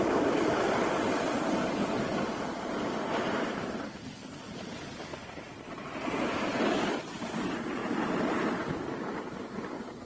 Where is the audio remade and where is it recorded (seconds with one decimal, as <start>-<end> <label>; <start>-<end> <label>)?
0.0-10.1 recorded